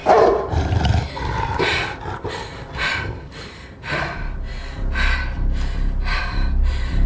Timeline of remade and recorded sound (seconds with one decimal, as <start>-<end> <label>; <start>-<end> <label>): 0.0-0.7 remade; 0.7-7.1 recorded